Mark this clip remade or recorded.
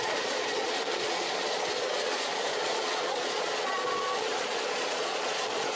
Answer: remade